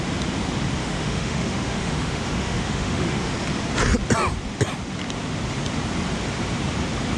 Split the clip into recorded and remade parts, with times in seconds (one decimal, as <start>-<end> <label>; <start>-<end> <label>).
0.0-0.8 recorded; 0.8-3.3 remade; 3.3-7.2 recorded